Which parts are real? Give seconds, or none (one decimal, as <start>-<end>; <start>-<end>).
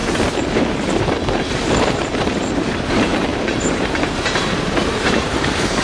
0.0-1.4